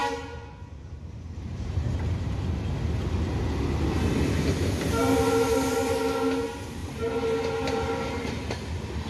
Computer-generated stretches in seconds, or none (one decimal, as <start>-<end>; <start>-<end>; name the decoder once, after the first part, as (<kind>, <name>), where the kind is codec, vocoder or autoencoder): 0.0-2.7 (vocoder, BigVGAN v2); 5.4-6.0; 6.8-8.6